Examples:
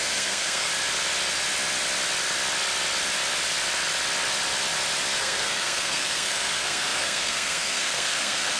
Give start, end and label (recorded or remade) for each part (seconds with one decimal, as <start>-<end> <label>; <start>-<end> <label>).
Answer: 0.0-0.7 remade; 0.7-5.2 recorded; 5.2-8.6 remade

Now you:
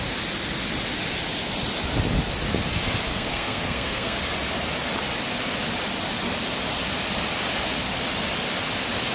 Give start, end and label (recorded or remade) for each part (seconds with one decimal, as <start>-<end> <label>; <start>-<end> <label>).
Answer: 0.0-3.1 recorded; 3.1-4.2 remade; 4.2-9.1 recorded

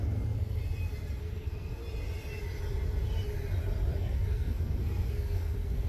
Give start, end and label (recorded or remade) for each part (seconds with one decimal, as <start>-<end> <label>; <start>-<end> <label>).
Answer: 0.0-0.6 remade; 0.6-1.2 recorded; 1.2-1.8 remade; 1.8-3.9 recorded; 3.9-5.9 remade